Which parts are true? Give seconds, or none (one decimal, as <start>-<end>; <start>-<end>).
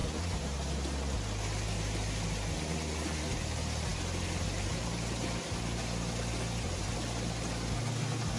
0.0-8.4